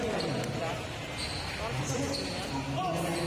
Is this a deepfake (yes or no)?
no